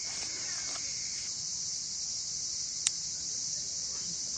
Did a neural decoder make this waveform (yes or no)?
no